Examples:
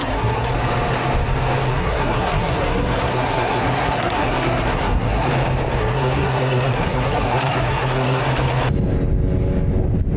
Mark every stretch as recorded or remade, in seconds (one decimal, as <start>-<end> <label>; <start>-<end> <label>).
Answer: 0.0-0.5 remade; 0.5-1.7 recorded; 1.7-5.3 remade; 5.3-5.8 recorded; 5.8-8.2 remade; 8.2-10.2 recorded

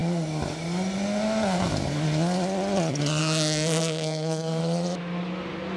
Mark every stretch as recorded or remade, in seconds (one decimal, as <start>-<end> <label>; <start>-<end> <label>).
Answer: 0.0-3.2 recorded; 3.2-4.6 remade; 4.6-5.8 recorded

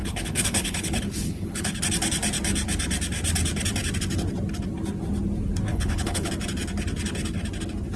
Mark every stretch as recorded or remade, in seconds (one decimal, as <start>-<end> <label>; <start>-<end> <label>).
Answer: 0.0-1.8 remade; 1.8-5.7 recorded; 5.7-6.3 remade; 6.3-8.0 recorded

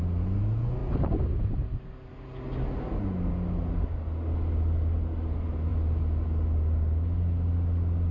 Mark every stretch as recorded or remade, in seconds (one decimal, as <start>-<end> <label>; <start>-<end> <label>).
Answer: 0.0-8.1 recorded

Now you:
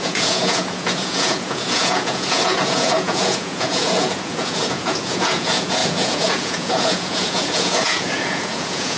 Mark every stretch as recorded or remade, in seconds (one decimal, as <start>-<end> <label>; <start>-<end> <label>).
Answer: 0.0-9.0 remade